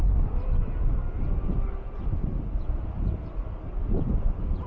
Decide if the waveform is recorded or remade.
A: recorded